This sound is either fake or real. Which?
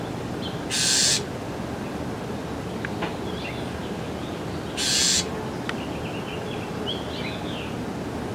real